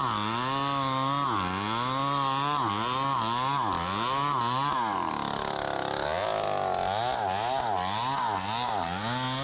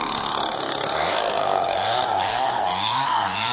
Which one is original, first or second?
first